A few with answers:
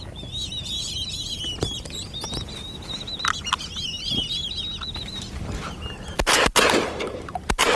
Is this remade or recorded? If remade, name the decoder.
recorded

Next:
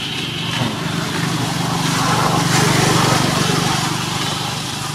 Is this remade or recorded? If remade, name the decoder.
recorded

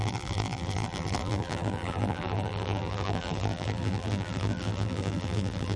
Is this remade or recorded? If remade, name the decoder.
remade, vocoder, BigVGAN v2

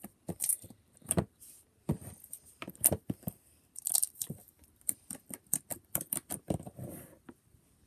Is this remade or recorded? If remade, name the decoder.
remade, vocoder, BigVGAN v2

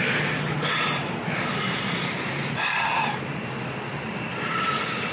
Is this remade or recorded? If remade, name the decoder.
remade, vocoder, BigVGAN v2